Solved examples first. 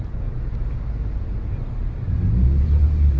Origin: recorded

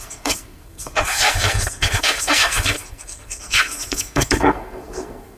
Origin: remade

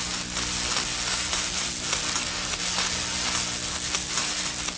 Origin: recorded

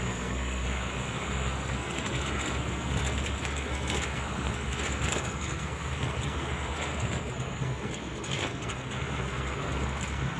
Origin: remade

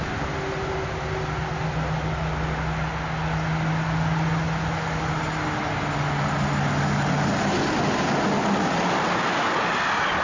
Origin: recorded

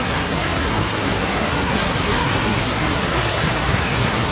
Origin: remade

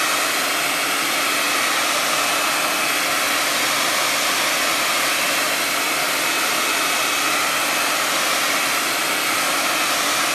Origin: recorded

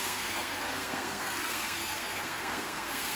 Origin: remade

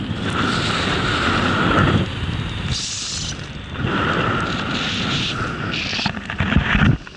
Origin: recorded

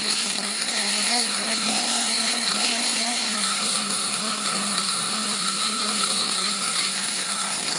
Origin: remade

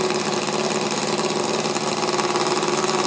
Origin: recorded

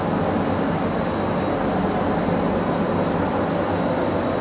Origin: recorded